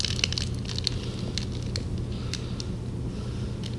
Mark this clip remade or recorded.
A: recorded